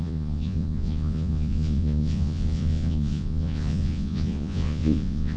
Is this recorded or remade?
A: remade